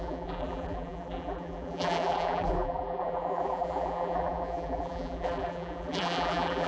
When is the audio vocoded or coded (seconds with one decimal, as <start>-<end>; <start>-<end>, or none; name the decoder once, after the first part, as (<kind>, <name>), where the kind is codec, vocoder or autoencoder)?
0.0-6.7 (vocoder, BigVGAN v2)

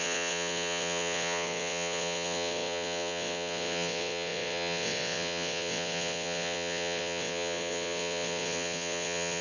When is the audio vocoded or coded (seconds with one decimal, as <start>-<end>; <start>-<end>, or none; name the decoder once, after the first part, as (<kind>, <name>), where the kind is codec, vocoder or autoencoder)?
0.0-9.4 (vocoder, WaveNeXt)

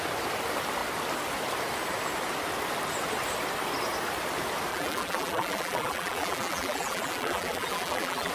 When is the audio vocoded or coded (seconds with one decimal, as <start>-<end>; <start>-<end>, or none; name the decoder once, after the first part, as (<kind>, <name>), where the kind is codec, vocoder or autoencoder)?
4.7-8.3 (vocoder, BigVGAN v2)

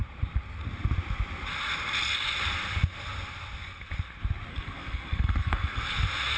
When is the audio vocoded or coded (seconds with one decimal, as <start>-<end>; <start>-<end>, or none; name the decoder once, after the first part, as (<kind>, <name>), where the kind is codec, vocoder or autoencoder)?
4.5-5.8 (codec, SNAC)